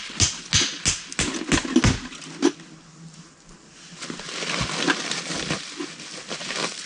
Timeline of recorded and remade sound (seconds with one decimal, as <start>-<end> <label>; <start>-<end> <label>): 0.0-6.9 recorded